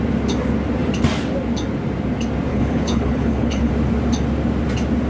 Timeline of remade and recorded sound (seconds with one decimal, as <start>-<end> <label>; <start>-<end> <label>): 0.0-2.5 recorded; 2.5-3.7 remade; 3.7-5.1 recorded